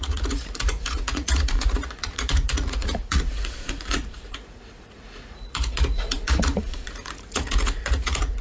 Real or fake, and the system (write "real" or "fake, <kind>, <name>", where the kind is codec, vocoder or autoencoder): fake, vocoder, Vocos